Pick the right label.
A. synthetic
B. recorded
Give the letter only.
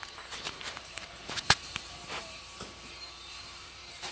A